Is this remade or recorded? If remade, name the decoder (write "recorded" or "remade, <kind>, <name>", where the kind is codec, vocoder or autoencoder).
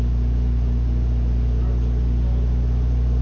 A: recorded